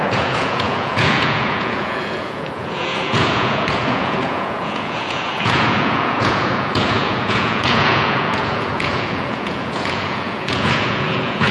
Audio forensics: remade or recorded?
remade